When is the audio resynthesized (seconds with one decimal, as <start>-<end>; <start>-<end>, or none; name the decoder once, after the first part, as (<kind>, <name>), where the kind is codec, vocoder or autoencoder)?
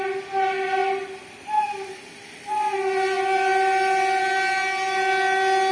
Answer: none